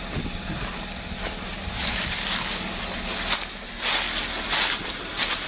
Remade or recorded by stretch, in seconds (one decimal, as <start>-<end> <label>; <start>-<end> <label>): 0.0-1.9 recorded; 1.9-2.8 remade; 2.8-5.5 recorded